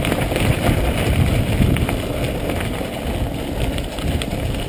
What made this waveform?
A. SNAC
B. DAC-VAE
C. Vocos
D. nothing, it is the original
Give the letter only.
D